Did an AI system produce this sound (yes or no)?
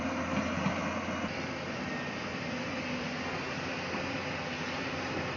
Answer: no